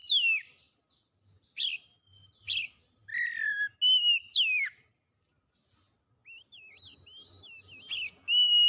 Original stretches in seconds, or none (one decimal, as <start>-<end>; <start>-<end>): 0.0-8.7